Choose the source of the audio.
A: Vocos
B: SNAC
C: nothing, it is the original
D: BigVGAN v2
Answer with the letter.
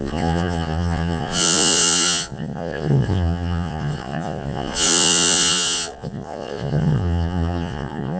A